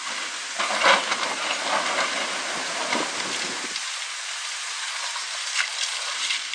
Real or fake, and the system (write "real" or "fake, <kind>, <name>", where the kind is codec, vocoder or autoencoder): real